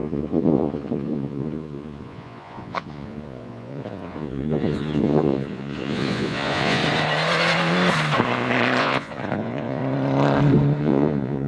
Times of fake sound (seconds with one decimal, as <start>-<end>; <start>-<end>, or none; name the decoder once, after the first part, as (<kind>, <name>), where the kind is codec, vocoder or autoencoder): 0.0-6.8 (vocoder, Vocos); 8.8-9.8; 10.8-11.5